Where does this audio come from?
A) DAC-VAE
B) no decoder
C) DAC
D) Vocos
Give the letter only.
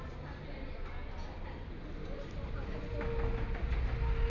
B